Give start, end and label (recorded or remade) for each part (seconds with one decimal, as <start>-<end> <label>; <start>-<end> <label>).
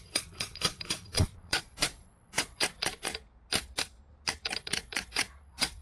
0.0-3.1 remade; 3.1-4.6 recorded; 4.6-5.8 remade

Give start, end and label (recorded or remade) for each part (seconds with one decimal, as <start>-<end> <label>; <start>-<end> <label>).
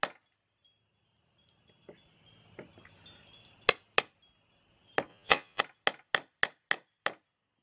0.0-5.1 recorded; 5.1-5.6 remade; 5.6-7.6 recorded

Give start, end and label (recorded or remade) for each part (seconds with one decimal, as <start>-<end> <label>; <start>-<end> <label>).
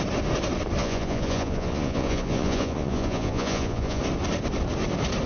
0.0-0.8 recorded; 0.8-4.0 remade; 4.0-5.3 recorded